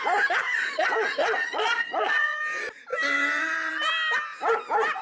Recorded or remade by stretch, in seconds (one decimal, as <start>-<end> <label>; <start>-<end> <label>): 0.0-0.5 recorded; 0.5-2.4 remade; 2.4-5.0 recorded